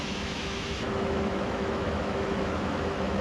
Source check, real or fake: fake